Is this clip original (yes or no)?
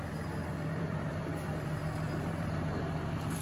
no